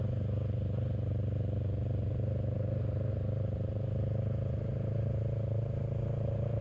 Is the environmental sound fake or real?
real